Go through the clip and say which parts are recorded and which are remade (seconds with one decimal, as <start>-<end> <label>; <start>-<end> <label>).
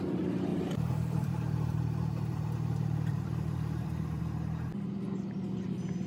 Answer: 0.0-0.5 recorded; 0.5-4.2 remade; 4.2-6.1 recorded